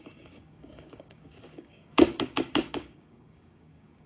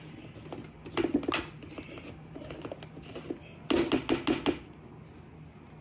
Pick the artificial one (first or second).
first